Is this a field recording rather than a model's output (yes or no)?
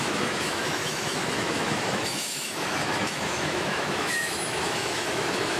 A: no